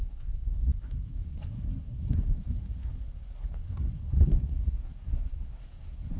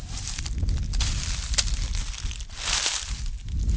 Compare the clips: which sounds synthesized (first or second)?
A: first